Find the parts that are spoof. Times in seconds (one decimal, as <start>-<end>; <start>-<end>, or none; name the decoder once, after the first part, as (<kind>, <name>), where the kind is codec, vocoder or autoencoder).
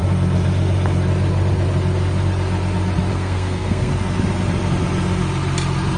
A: 3.1-3.9 (codec, SNAC)